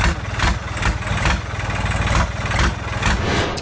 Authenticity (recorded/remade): recorded